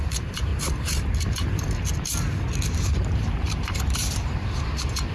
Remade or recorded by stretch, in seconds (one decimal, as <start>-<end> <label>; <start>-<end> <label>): 0.0-0.5 remade; 0.5-2.8 recorded; 2.8-5.1 remade